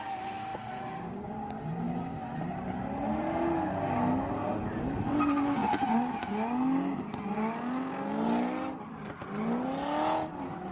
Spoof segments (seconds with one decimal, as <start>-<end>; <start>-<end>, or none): 0.5-1.7